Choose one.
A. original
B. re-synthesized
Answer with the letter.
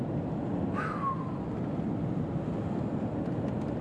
A